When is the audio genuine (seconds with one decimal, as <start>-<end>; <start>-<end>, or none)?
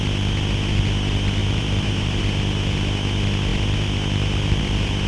0.0-1.4; 2.2-5.1